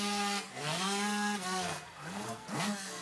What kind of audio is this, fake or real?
fake